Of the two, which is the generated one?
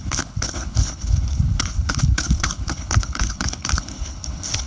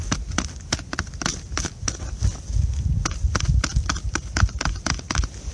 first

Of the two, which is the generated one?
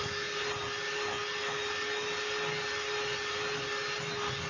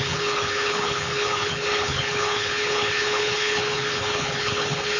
second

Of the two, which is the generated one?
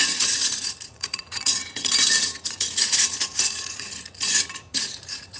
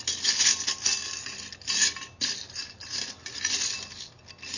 first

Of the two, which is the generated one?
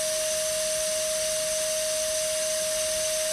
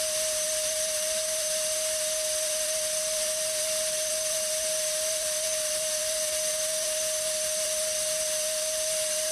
second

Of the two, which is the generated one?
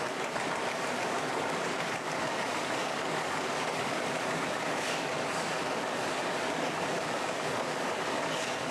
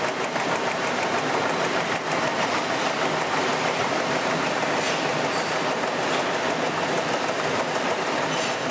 first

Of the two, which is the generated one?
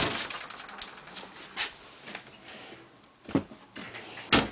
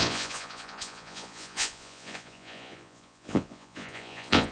second